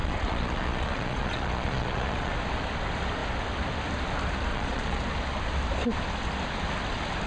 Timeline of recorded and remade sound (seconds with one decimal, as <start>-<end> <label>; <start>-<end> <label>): 0.0-2.3 remade; 2.3-4.5 recorded; 4.5-5.0 remade; 5.0-7.3 recorded